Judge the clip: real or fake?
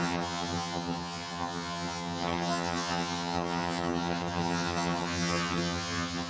fake